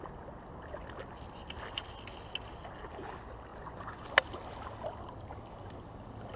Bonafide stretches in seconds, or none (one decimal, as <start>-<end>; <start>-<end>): 0.0-3.5; 4.1-6.4